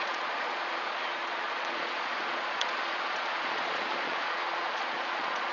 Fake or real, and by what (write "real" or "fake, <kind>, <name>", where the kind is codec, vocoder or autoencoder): fake, vocoder, Vocos